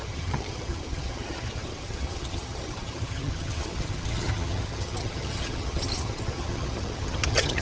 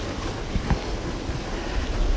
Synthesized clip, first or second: first